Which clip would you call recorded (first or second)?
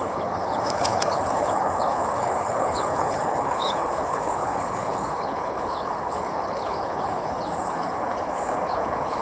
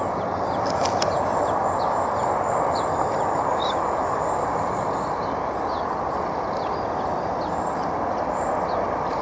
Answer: second